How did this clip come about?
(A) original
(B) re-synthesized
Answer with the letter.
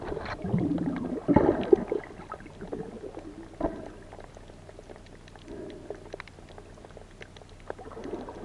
A